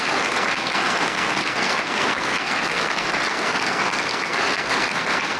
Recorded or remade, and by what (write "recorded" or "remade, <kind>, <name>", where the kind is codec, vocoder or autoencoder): remade, codec, SNAC